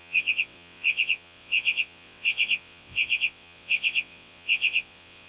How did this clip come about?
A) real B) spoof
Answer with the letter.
B